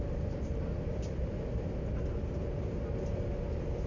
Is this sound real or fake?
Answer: real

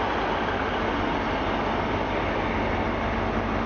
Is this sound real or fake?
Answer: real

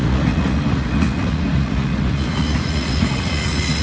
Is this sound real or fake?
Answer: fake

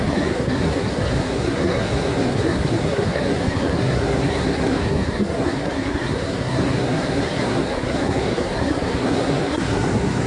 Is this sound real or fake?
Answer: fake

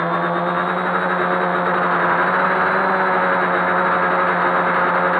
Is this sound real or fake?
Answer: real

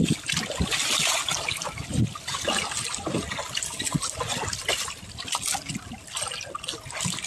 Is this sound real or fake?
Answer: real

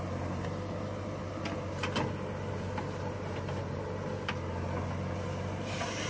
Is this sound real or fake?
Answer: real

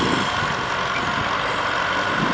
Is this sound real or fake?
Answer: real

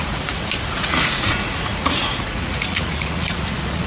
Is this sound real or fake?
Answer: fake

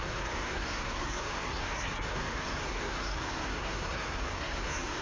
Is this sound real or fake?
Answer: fake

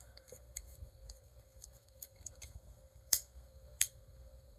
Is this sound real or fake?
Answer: fake